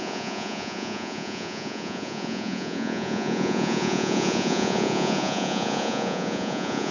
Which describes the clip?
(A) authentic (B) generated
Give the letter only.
B